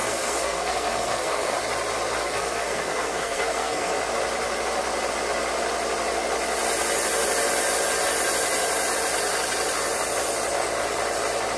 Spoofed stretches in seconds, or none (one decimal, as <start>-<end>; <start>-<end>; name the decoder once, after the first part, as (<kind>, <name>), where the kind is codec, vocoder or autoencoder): 0.0-1.6 (codec, SNAC); 2.2-4.0